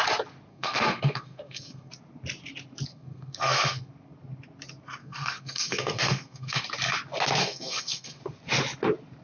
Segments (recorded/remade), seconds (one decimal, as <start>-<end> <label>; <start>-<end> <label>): 0.0-0.5 recorded; 0.5-1.9 remade; 1.9-2.9 recorded; 2.9-3.9 remade; 3.9-5.0 recorded; 5.0-6.6 remade; 6.6-7.4 recorded; 7.4-8.2 remade; 8.2-9.2 recorded